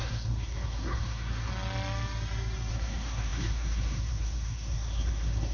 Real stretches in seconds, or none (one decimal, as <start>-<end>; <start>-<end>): 1.5-2.7